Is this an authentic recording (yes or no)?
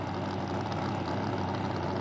yes